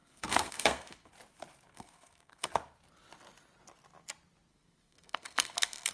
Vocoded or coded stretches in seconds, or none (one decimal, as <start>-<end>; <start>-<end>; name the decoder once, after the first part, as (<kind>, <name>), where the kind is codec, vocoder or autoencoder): 0.0-1.1 (codec, SNAC); 1.7-2.5; 4.5-5.9